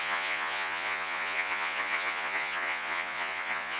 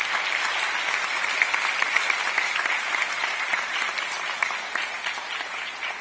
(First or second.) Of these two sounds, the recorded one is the second